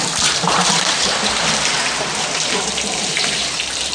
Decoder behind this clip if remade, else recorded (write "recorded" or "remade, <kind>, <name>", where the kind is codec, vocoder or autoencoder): remade, vocoder, BigVGAN v2